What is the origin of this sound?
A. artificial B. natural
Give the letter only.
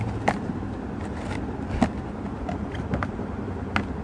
B